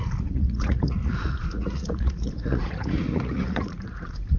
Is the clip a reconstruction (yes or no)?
yes